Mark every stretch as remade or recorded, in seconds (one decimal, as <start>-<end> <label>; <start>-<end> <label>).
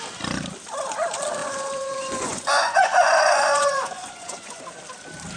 0.0-1.4 recorded; 1.4-4.6 remade; 4.6-5.4 recorded